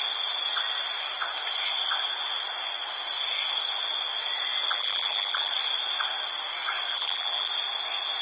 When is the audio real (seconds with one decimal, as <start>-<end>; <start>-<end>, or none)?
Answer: 0.0-4.7; 5.5-6.9; 7.5-8.2